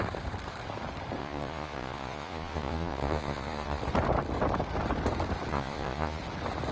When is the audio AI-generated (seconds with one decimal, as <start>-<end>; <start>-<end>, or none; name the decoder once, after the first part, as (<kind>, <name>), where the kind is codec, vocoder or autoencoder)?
1.2-3.8 (vocoder, Vocos); 5.5-6.2